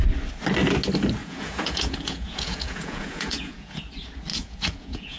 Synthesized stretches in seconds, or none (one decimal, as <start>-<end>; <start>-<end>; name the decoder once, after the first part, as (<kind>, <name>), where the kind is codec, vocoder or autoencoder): 1.2-3.8 (vocoder, Vocos); 4.3-5.2